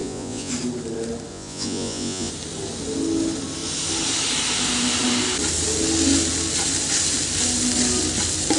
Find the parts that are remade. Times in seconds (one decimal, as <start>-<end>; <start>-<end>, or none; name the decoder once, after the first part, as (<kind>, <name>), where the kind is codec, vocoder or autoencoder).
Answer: 0.0-0.5 (vocoder, Vocos); 1.3-2.3